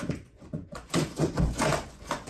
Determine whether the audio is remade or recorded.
remade